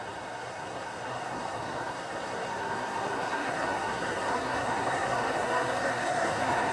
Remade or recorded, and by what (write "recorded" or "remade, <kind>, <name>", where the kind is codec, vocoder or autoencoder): remade, codec, SNAC